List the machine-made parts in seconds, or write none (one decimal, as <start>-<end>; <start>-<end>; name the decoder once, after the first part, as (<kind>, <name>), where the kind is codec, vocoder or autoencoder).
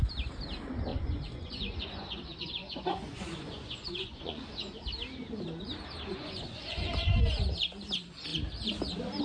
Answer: 0.9-4.8 (vocoder, Vocos); 6.1-7.3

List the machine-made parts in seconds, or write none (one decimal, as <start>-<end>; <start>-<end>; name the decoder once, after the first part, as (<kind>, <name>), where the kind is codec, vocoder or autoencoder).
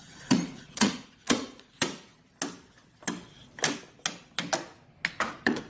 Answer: 0.0-2.1 (vocoder, Vocos); 5.3-5.7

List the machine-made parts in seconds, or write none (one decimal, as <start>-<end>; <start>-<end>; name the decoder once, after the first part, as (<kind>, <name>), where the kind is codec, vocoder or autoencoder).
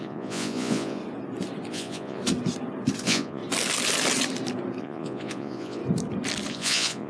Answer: 0.0-1.0 (vocoder, Vocos); 1.7-2.2; 3.0-3.4; 4.8-5.8; 6.5-7.1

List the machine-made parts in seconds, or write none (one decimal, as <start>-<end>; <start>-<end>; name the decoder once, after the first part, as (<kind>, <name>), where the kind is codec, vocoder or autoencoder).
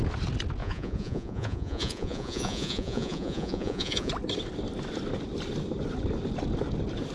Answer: 0.6-4.1 (vocoder, Vocos)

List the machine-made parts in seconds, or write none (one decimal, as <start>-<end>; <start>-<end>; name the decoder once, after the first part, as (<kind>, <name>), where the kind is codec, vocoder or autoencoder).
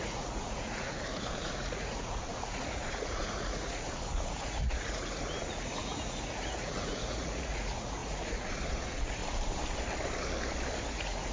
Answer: 0.0-9.2 (vocoder, Vocos); 10.9-11.3